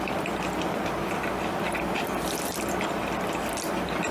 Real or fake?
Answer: real